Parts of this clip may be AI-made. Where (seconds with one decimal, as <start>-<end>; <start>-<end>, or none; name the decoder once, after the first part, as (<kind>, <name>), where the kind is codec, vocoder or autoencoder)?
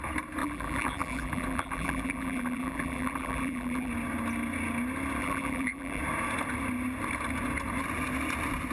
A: 0.4-3.9 (vocoder, BigVGAN v2); 5.2-6.0